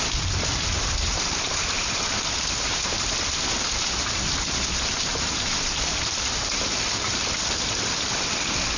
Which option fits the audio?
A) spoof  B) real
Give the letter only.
A